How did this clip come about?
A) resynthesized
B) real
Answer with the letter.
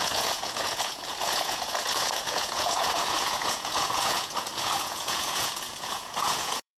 A